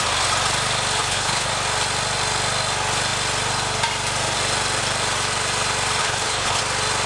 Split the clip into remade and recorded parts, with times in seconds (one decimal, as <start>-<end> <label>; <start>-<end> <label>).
0.0-1.0 recorded; 1.0-1.5 remade; 1.5-6.0 recorded; 6.0-6.6 remade; 6.6-7.1 recorded